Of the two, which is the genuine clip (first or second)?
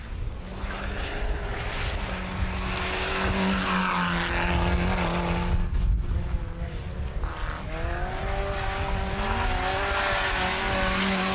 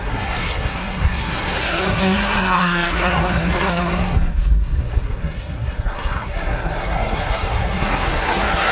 first